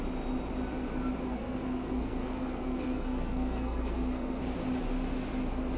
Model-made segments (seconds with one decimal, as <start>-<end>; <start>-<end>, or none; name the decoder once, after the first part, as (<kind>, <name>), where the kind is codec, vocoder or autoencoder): 1.3-4.4 (codec, SNAC)